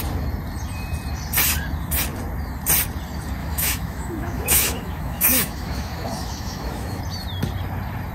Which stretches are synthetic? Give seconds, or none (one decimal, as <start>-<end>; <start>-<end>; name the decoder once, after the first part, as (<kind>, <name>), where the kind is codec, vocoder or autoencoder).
3.4-7.0 (autoencoder, DAC-VAE)